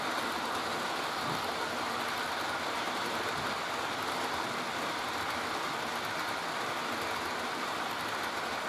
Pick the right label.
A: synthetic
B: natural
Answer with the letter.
B